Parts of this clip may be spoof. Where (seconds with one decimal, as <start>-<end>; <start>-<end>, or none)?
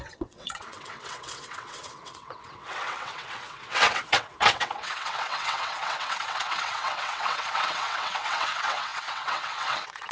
0.0-10.1